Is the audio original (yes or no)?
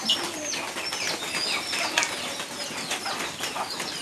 no